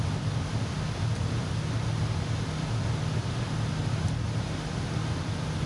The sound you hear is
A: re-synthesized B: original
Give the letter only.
B